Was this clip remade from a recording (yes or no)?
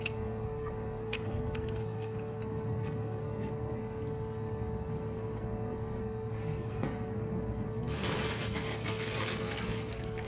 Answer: yes